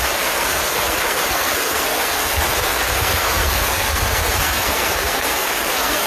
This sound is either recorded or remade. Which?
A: remade